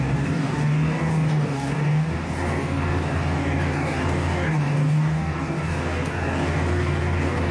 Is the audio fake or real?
fake